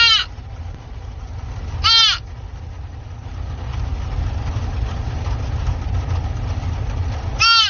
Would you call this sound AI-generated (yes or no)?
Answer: no